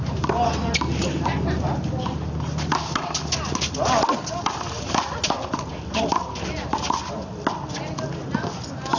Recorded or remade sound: recorded